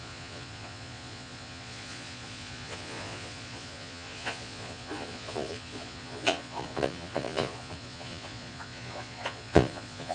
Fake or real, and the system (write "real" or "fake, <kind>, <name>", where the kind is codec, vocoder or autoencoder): fake, vocoder, Vocos